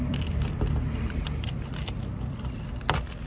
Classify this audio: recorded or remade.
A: remade